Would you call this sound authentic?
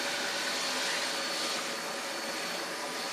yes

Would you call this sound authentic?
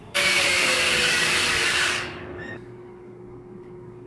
no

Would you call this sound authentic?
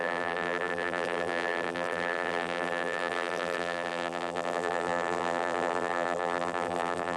no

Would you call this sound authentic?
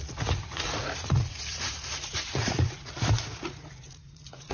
no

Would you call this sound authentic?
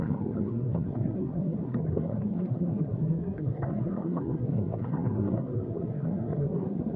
no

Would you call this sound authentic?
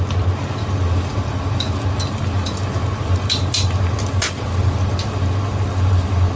yes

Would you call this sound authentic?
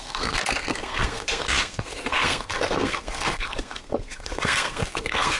no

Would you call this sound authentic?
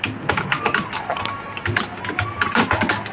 yes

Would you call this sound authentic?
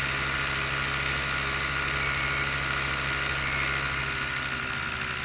yes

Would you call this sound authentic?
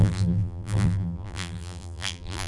no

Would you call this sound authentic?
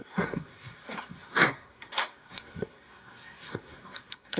no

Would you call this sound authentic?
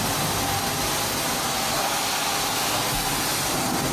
yes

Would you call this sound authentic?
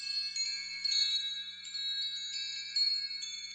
no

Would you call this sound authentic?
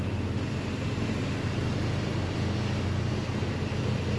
yes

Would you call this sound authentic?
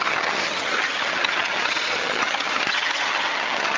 no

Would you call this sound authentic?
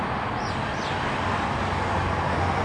yes